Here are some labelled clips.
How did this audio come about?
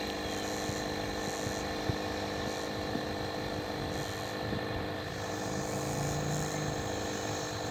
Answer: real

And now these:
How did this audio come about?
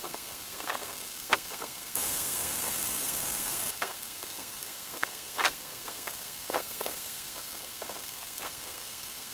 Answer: fake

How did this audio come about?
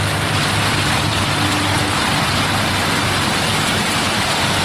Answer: real